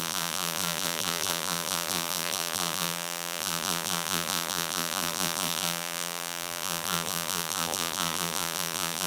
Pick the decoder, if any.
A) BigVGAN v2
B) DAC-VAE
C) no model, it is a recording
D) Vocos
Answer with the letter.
A